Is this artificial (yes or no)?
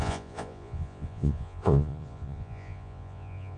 yes